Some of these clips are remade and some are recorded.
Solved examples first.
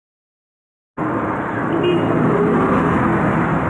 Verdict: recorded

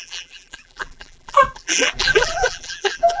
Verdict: remade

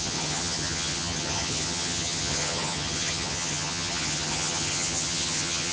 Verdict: remade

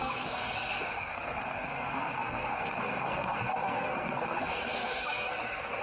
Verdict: remade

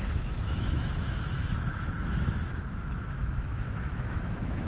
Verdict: remade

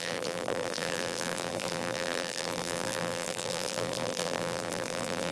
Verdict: remade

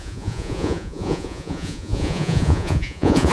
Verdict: remade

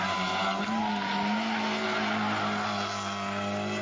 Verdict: recorded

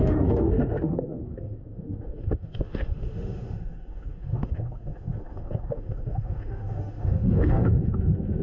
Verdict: remade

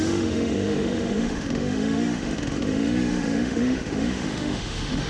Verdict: remade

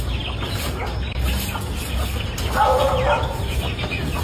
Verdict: recorded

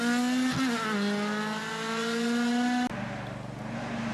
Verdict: recorded